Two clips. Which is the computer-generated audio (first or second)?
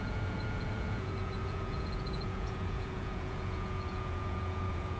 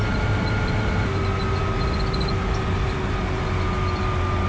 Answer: first